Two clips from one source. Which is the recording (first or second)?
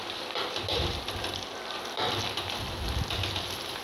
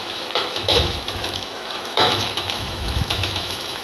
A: first